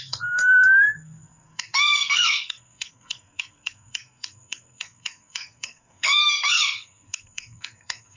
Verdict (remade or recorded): remade